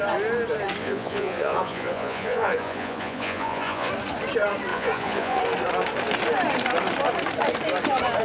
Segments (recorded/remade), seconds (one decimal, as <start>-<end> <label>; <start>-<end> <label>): 0.0-0.8 recorded; 0.8-3.9 remade; 3.9-4.7 recorded; 4.7-5.4 remade; 5.4-8.2 recorded